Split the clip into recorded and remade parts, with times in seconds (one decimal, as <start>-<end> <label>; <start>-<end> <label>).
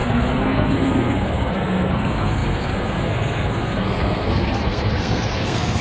0.0-5.8 remade